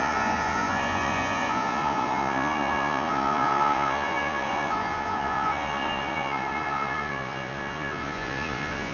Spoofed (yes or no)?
yes